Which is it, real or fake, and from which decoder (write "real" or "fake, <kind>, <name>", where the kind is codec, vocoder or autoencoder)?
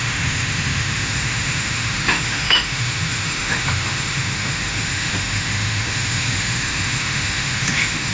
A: fake, autoencoder, DAC-VAE